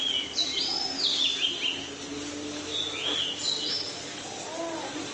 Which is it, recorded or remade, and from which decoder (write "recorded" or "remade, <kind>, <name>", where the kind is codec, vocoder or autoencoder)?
recorded